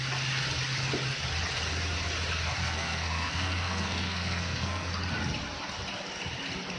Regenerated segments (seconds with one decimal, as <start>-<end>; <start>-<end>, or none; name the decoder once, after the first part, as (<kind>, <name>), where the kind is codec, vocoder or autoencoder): 2.6-4.9 (codec, SNAC)